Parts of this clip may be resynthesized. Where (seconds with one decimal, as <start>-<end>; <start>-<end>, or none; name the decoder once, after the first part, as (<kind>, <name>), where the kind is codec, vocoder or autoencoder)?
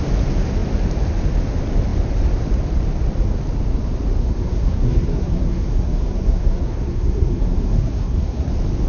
4.2-8.5 (codec, SNAC)